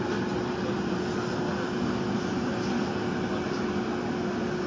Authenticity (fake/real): real